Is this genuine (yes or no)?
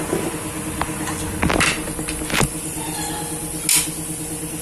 yes